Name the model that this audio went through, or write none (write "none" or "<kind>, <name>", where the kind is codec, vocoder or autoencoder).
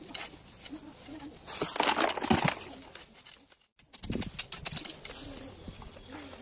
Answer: none